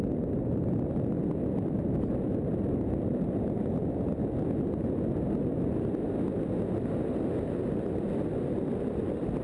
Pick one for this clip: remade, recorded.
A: recorded